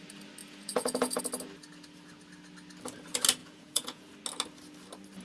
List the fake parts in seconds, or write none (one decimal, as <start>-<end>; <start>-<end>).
0.4-1.2; 3.4-4.1